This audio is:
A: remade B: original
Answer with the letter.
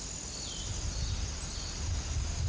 B